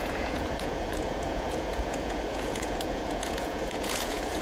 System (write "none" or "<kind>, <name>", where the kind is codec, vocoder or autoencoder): vocoder, Vocos